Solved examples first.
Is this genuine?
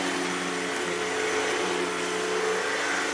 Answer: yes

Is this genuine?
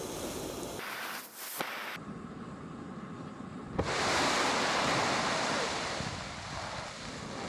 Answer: yes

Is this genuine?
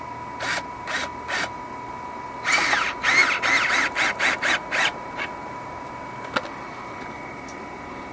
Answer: yes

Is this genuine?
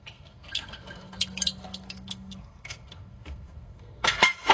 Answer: no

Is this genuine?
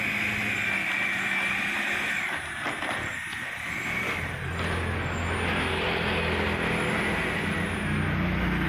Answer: yes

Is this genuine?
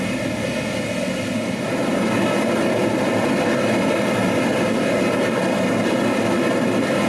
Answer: yes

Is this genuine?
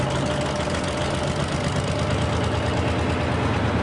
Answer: yes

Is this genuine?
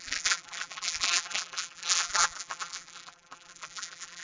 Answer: no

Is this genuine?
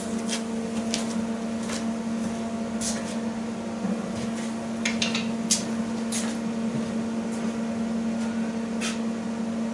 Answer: yes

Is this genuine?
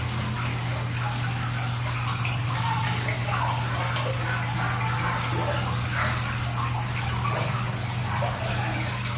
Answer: yes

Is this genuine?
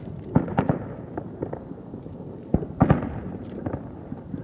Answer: yes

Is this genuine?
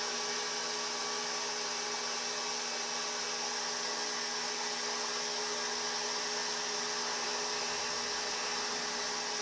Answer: yes